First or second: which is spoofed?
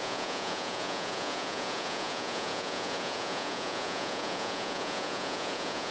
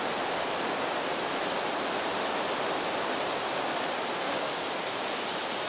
first